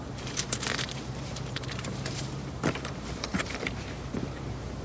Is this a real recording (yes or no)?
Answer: no